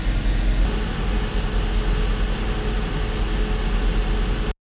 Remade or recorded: recorded